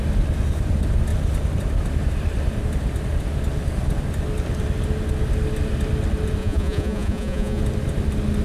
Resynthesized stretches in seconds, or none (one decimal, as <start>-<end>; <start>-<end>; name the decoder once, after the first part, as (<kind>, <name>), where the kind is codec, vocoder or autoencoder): 6.4-7.6 (vocoder, Vocos)